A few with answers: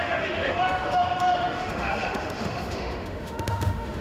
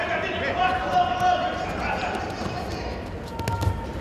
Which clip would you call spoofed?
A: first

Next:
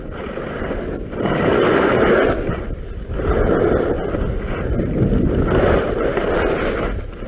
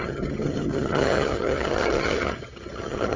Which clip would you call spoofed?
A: second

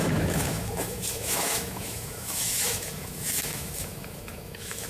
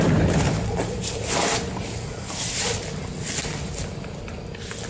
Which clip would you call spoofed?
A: first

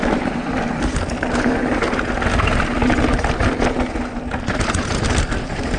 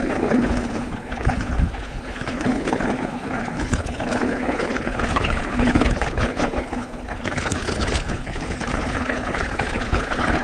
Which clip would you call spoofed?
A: second